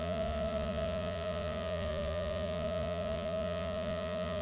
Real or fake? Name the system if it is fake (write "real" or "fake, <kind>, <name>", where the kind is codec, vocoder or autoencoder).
fake, vocoder, Vocos